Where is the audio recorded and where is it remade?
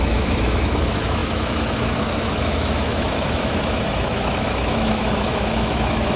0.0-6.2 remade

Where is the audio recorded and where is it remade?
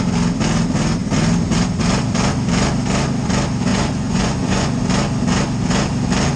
0.0-3.7 recorded; 3.7-4.8 remade; 4.8-6.4 recorded